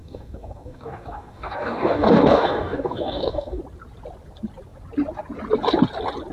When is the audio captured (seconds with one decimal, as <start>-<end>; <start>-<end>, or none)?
3.6-6.3